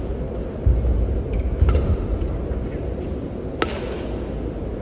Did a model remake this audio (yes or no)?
no